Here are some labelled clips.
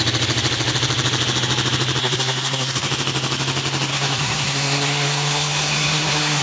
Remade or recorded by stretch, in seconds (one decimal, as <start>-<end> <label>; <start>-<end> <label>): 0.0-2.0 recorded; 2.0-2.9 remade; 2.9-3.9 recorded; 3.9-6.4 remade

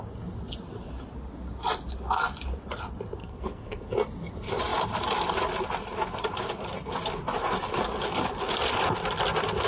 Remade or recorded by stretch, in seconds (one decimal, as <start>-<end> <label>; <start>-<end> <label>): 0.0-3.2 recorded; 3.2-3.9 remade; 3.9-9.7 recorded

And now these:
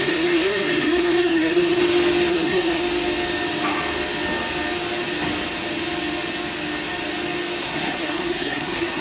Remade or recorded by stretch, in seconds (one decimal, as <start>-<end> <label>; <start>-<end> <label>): 0.0-1.8 remade; 1.8-2.3 recorded; 2.3-2.8 remade; 2.8-7.6 recorded; 7.6-9.0 remade

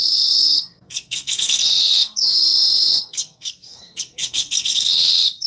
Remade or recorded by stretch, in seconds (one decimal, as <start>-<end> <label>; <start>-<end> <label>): 0.0-5.5 remade

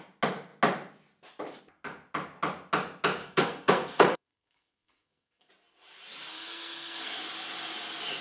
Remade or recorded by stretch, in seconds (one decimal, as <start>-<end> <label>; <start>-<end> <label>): 0.0-3.2 recorded; 3.2-5.5 remade; 5.5-6.3 recorded; 6.3-7.2 remade; 7.2-8.2 recorded